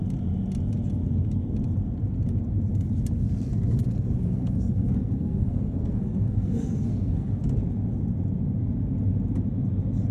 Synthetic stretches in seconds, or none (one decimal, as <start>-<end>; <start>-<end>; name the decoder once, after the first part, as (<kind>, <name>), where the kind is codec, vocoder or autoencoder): 4.2-7.4 (codec, SNAC)